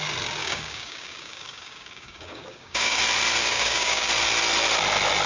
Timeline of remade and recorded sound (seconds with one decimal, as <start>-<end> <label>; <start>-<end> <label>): 0.0-0.4 recorded; 0.4-3.0 remade; 3.0-3.4 recorded; 3.4-4.1 remade; 4.1-5.3 recorded